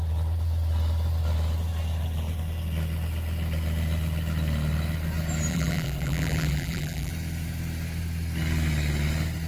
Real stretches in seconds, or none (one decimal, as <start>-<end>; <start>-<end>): 0.0-5.5; 7.1-9.5